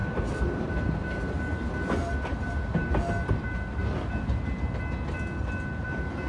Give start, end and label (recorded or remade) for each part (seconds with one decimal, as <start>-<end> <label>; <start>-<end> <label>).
0.0-6.3 recorded